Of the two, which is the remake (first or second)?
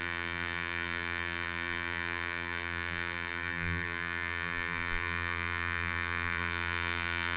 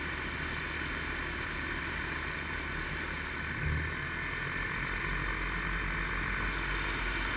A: first